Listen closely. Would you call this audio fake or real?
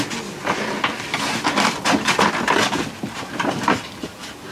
real